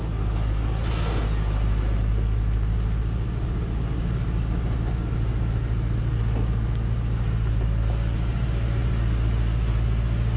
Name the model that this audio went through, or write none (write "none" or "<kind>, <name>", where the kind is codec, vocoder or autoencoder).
none